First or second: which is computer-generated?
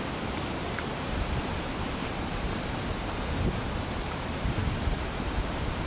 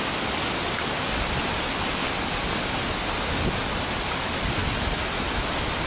first